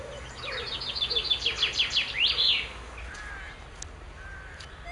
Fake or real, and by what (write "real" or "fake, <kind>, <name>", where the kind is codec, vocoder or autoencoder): real